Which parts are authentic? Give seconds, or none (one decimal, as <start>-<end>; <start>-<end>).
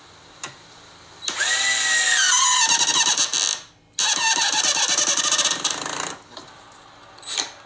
0.0-7.7